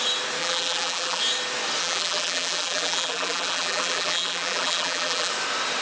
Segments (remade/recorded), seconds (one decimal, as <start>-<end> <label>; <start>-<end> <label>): 0.0-0.4 recorded; 0.4-1.2 remade; 1.2-1.8 recorded; 1.8-5.3 remade; 5.3-5.8 recorded